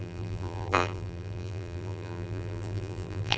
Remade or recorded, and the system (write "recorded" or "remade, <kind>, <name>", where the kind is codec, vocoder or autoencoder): remade, vocoder, BigVGAN v2